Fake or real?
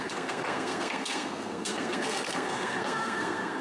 fake